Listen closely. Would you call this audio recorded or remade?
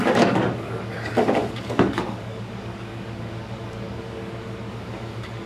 remade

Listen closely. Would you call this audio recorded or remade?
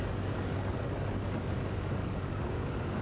remade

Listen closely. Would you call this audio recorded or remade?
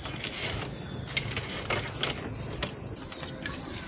recorded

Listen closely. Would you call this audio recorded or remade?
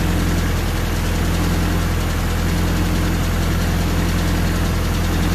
recorded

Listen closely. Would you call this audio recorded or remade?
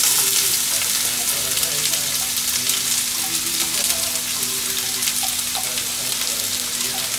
recorded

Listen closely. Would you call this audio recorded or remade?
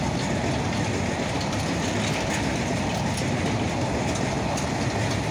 recorded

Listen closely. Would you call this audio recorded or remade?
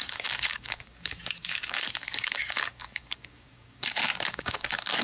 remade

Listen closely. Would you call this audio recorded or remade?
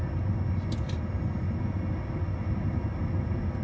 recorded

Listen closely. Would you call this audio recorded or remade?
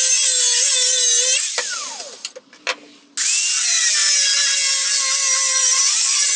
recorded